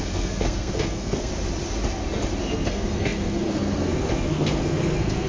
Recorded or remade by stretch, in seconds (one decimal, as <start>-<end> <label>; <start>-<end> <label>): 0.0-1.3 remade; 1.3-2.4 recorded; 2.4-5.3 remade